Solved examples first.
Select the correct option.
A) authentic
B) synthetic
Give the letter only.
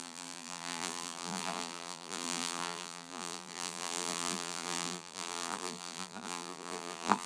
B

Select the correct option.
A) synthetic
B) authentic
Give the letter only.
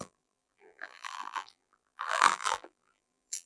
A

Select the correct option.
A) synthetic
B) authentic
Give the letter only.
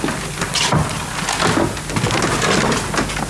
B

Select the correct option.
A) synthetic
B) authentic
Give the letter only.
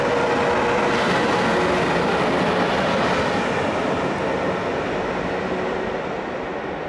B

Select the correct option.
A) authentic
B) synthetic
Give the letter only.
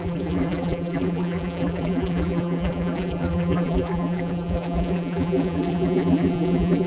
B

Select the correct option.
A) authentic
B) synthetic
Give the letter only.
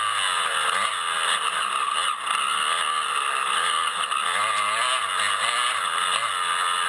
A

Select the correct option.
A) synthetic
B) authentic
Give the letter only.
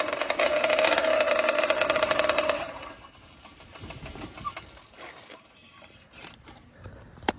A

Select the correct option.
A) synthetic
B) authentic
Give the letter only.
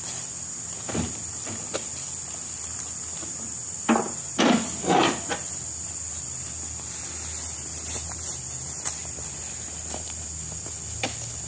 B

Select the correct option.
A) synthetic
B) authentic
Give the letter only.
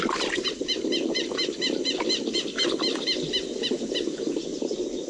A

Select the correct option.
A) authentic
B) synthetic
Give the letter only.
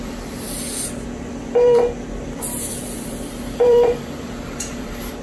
B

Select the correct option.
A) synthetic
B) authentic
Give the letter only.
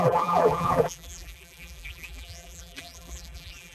A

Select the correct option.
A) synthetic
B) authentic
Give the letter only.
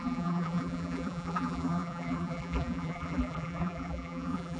A